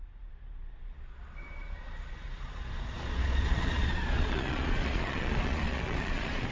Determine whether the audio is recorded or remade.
remade